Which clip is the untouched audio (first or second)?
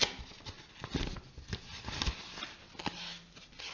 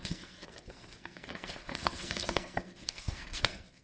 first